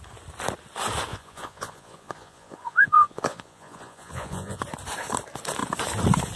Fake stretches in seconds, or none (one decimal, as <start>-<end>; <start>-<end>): 1.1-4.6